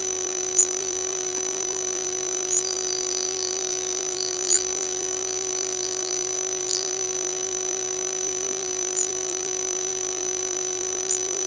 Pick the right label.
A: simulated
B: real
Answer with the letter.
A